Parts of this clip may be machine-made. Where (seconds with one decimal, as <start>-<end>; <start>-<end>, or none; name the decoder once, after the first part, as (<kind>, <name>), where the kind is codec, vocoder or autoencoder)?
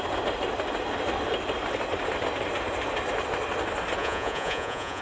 4.0-5.0 (vocoder, Vocos)